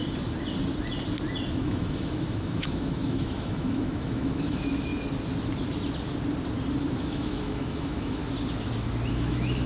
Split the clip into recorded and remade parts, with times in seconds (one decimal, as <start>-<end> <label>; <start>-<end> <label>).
0.0-1.5 recorded; 1.5-4.9 remade; 4.9-7.0 recorded; 7.0-8.2 remade; 8.2-9.1 recorded; 9.1-9.7 remade